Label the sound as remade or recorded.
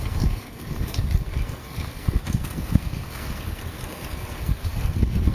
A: remade